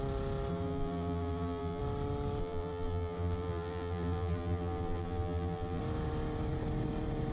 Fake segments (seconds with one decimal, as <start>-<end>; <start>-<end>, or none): 0.5-1.8; 2.4-5.8